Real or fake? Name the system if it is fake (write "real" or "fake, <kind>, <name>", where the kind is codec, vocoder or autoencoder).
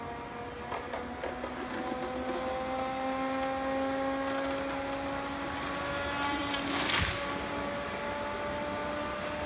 real